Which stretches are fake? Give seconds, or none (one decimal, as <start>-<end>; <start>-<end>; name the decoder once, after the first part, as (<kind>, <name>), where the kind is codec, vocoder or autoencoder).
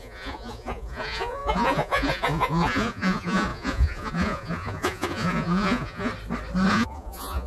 0.0-6.1 (vocoder, Vocos); 6.7-7.5